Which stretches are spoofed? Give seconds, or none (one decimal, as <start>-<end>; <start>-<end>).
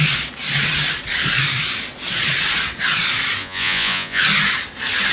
3.4-4.2